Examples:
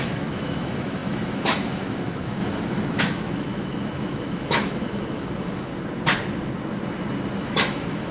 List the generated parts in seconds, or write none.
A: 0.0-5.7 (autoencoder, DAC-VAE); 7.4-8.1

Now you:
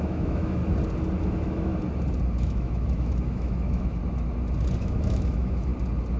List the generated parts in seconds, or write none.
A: 0.0-0.6 (autoencoder, DAC-VAE); 1.2-1.7; 2.4-4.0; 4.8-5.7

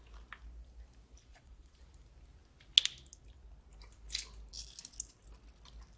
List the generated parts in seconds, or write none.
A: 1.2-1.8 (vocoder, Vocos)

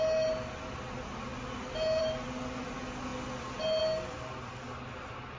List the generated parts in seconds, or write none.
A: none

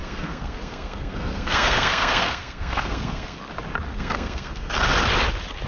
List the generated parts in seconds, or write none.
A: 0.0-3.4 (codec, SNAC); 3.9-4.7